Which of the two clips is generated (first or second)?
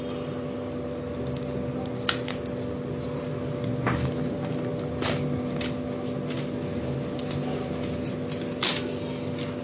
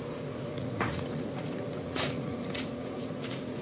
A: second